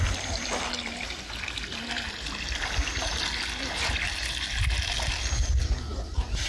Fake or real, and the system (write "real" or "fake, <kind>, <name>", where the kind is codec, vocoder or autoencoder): real